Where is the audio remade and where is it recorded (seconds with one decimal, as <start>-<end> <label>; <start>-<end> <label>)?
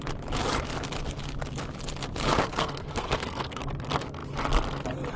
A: 0.0-2.4 recorded; 2.4-3.6 remade; 3.6-5.2 recorded